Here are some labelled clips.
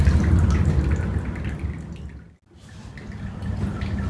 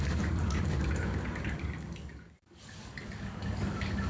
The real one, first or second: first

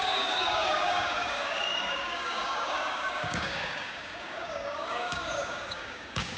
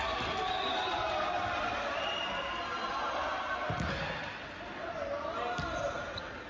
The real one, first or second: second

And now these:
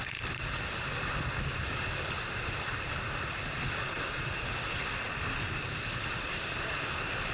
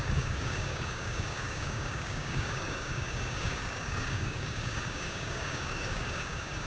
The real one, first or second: first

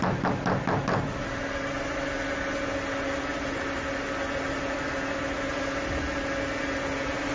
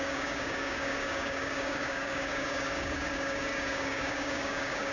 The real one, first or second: first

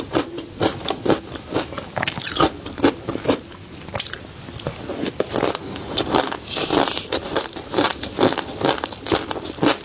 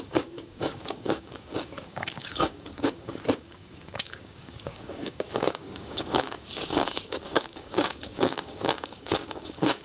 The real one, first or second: first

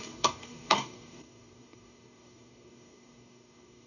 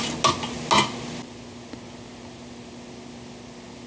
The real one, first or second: second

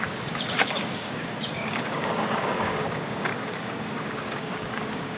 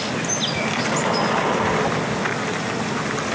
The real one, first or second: second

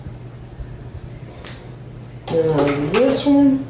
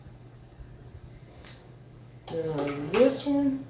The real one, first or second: first